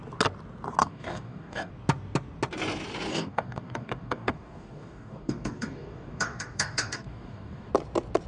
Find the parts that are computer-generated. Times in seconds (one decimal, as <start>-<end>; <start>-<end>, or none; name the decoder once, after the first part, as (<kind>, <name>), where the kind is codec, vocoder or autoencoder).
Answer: 0.8-1.7 (codec, DAC); 3.1-7.7